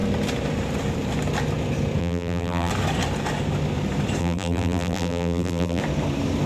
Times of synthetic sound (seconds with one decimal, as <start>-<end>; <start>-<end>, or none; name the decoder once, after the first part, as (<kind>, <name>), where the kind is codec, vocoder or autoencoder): 2.0-2.7 (vocoder, BigVGAN v2); 4.2-5.8